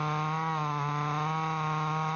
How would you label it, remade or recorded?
recorded